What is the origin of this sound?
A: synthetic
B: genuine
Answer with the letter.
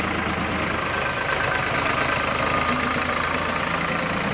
B